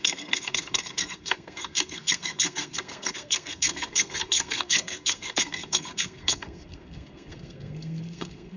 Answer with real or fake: fake